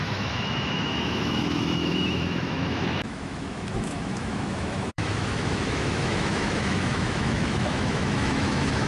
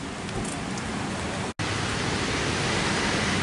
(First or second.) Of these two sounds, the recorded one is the second